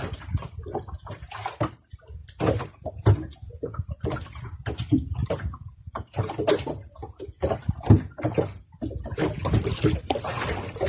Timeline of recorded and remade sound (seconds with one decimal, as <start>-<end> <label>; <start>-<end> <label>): 0.0-2.2 recorded; 2.2-2.8 remade; 2.8-5.2 recorded; 5.2-6.2 remade; 6.2-10.9 recorded